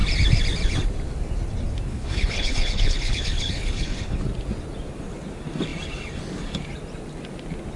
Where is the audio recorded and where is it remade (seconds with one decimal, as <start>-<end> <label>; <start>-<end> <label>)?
0.0-1.9 recorded; 1.9-4.2 remade; 4.2-7.8 recorded